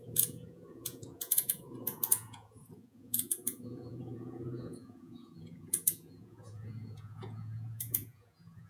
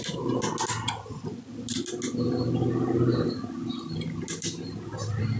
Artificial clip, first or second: first